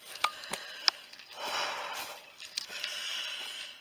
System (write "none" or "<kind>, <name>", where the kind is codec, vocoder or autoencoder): none